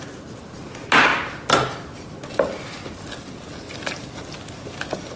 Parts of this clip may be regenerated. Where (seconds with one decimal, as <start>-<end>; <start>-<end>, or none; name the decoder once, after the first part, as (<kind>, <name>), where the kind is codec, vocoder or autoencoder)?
none